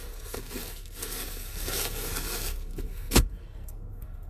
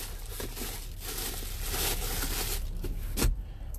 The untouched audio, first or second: second